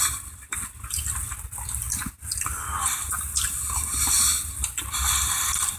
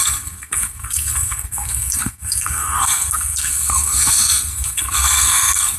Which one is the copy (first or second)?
second